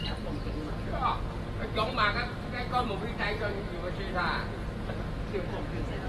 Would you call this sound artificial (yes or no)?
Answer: no